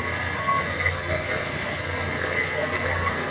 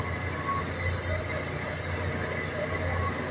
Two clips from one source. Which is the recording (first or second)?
second